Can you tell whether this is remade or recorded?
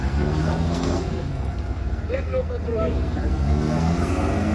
remade